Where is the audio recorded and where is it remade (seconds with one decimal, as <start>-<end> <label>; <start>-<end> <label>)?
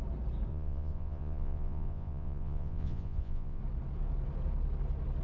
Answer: 0.0-0.5 recorded; 0.5-3.6 remade; 3.6-5.2 recorded